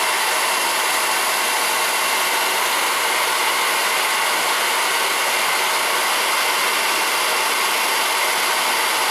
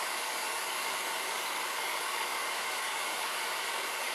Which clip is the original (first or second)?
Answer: first